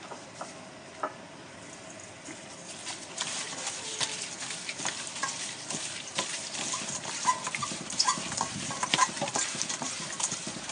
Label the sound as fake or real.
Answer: fake